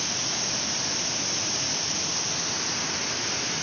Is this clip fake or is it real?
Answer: real